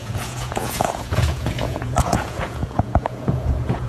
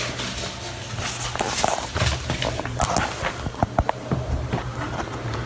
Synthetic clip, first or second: first